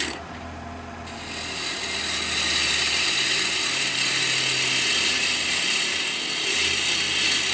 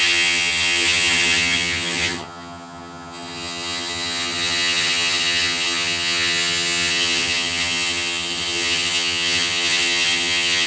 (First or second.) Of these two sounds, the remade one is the second